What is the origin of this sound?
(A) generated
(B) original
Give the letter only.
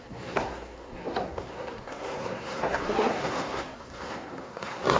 A